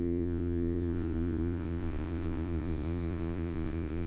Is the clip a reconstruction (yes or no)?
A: yes